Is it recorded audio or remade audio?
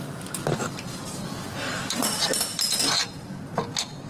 recorded